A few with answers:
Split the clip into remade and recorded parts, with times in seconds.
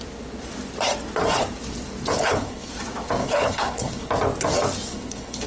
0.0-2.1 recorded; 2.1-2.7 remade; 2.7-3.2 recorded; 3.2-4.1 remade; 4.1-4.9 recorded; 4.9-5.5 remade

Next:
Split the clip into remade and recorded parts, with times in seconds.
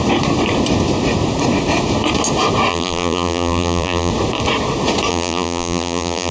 0.0-2.7 recorded; 2.7-4.1 remade; 4.1-5.1 recorded; 5.1-6.3 remade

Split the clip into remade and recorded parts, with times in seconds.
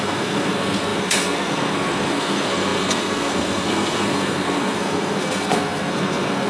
0.0-6.5 remade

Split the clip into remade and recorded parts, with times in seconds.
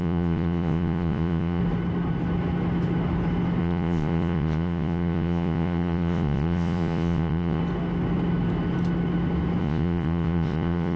0.0-1.6 remade; 1.6-3.6 recorded; 3.6-7.6 remade; 7.6-9.6 recorded; 9.6-11.0 remade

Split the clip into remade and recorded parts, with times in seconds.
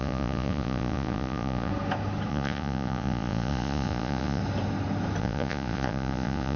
0.0-1.7 remade; 1.7-2.3 recorded; 2.3-4.4 remade; 4.4-5.2 recorded; 5.2-6.6 remade